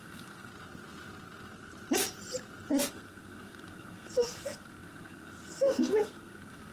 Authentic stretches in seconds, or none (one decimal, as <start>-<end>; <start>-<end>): 0.5-2.9